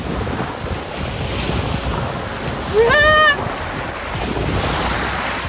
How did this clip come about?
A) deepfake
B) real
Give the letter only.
B